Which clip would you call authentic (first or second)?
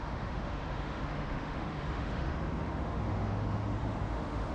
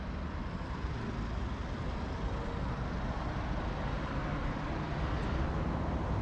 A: second